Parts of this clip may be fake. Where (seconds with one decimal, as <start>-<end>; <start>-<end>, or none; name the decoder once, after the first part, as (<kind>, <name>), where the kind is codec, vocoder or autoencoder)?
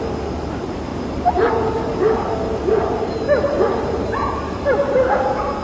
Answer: 0.9-4.3 (vocoder, BigVGAN v2)